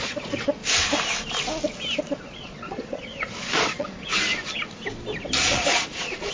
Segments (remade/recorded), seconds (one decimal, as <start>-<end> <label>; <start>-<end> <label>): 0.0-0.6 remade; 0.6-2.0 recorded; 2.0-4.1 remade; 4.1-5.4 recorded; 5.4-6.3 remade